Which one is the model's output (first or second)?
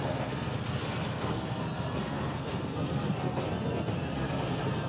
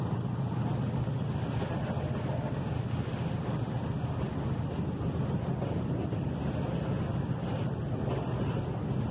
first